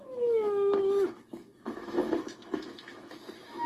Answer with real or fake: fake